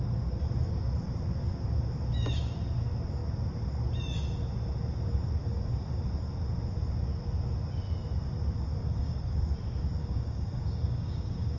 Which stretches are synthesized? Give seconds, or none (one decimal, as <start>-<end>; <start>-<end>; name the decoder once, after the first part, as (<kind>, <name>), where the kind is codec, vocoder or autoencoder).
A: 8.8-9.4 (codec, DAC); 10.0-11.6